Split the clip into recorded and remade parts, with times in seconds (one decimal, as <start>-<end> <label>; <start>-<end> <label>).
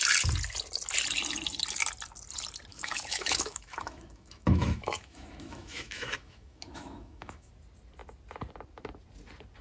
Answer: 0.0-2.7 recorded; 2.7-7.5 remade; 7.5-9.6 recorded